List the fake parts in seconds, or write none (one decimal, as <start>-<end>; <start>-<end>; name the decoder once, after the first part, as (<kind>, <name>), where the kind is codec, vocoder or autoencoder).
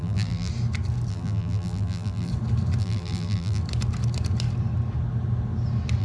0.0-0.5 (vocoder, BigVGAN v2); 1.1-2.3; 2.8-3.6